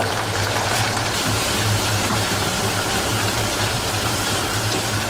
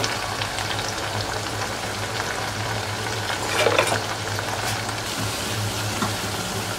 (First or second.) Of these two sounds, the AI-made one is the first